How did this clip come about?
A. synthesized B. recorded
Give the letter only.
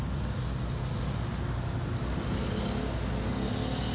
B